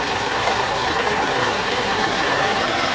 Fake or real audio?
fake